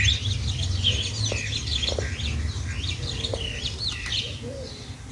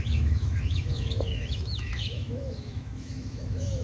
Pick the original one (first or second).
first